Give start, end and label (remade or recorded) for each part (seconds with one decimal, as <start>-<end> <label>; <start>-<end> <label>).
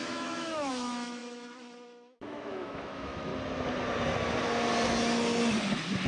0.0-3.3 remade; 3.3-6.1 recorded